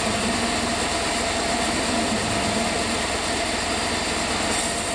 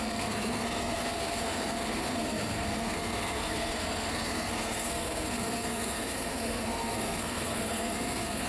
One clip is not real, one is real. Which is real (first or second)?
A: first